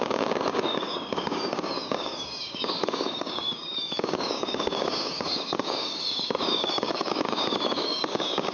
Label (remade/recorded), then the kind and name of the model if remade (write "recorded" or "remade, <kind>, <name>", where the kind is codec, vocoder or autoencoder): remade, codec, DAC